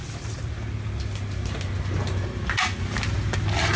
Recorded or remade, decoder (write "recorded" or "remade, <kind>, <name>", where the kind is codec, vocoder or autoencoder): recorded